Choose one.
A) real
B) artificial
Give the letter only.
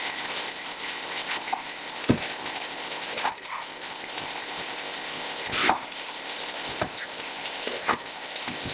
B